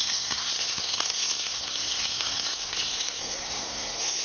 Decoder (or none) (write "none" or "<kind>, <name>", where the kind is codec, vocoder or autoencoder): codec, SNAC